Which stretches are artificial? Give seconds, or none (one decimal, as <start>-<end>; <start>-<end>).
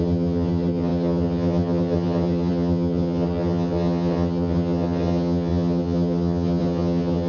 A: 0.0-7.3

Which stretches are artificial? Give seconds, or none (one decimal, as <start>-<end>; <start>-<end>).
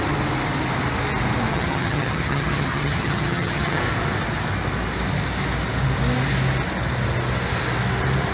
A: 1.5-3.8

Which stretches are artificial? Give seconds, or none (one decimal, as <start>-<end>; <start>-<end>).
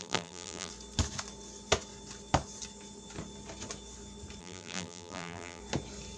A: 0.0-0.7; 4.4-5.6